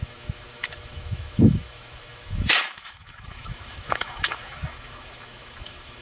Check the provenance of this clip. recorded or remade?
remade